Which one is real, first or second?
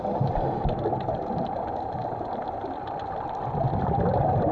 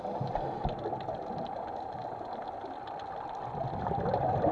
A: second